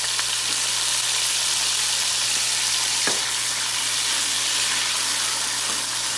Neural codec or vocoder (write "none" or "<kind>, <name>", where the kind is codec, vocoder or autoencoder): none